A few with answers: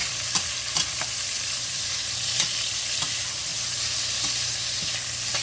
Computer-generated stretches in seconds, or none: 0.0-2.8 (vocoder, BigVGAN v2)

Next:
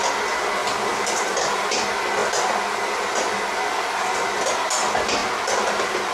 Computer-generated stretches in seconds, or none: 0.6-1.4 (vocoder, BigVGAN v2)

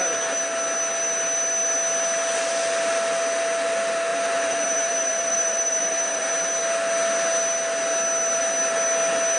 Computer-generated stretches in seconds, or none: 4.1-6.3 (vocoder, BigVGAN v2)